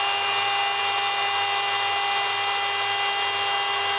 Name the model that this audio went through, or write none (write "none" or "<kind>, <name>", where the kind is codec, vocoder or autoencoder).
none